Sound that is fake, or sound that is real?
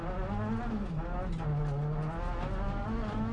real